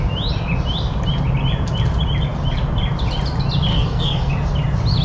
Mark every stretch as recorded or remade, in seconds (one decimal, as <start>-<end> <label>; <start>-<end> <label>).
0.0-3.7 recorded; 3.7-4.3 remade; 4.3-5.0 recorded